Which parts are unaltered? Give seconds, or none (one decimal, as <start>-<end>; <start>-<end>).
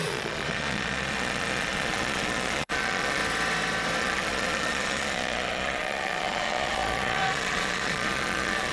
3.2-4.0